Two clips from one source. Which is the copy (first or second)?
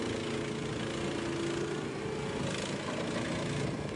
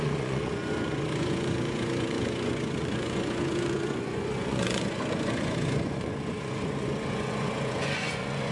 second